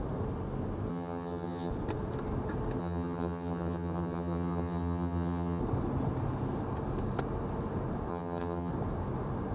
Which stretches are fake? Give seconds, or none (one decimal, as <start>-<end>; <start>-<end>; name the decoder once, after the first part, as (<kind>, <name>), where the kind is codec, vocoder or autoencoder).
0.9-1.7 (vocoder, HiFi-GAN); 2.8-5.6; 8.1-8.7